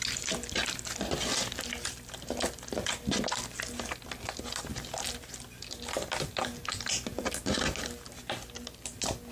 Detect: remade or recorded recorded